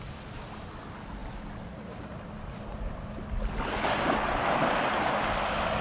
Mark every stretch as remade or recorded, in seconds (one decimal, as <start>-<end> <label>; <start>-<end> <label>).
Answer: 0.0-5.8 recorded